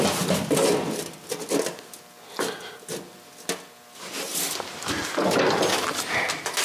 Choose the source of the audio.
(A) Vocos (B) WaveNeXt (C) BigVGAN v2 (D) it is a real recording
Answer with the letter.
D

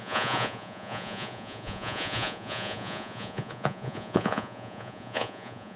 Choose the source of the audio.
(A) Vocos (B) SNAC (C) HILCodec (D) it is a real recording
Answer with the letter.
A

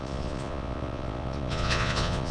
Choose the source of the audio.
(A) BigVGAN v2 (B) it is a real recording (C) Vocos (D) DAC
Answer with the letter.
C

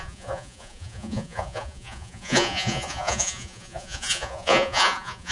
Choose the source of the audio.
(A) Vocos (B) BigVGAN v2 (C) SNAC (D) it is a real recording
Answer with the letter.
A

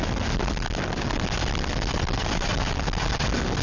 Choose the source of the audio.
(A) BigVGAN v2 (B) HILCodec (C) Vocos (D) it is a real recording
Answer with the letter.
D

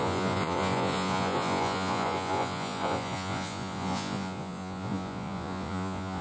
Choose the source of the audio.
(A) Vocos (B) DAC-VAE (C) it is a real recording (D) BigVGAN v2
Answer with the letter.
A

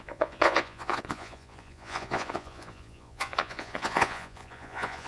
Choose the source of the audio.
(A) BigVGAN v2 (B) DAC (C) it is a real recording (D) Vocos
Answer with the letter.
D